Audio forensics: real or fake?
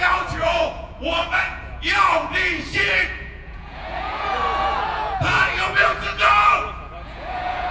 fake